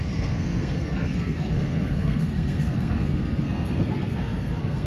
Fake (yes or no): yes